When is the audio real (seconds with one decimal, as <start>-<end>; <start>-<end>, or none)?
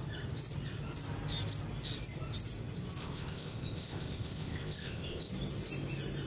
0.0-3.0; 5.3-6.3